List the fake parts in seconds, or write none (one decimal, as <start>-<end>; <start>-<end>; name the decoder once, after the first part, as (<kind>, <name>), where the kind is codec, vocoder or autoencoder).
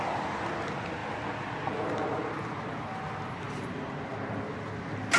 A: none